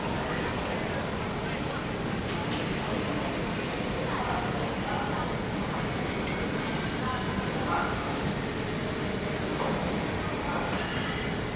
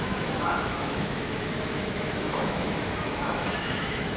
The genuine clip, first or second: first